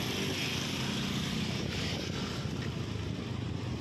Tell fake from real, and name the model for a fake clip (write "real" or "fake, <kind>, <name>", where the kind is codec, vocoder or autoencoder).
real